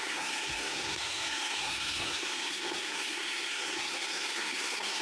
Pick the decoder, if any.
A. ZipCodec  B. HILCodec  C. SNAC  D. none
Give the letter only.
C